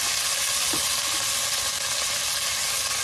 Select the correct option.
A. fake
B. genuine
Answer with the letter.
B